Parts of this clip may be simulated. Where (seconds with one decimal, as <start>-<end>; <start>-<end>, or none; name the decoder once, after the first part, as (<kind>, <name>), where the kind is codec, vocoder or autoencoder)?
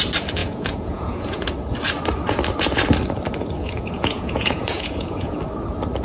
0.4-1.5 (vocoder, Vocos); 3.6-5.4